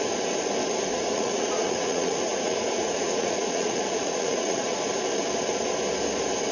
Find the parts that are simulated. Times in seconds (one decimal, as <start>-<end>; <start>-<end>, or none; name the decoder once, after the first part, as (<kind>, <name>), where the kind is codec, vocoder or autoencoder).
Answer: 0.9-4.8 (vocoder, Vocos)